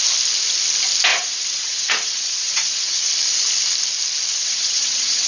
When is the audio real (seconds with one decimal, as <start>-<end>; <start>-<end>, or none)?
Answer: 0.0-1.1; 3.1-4.3